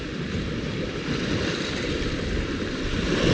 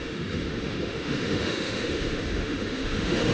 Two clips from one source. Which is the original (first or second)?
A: first